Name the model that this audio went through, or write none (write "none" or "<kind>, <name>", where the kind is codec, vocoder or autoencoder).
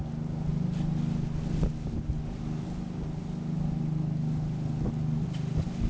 none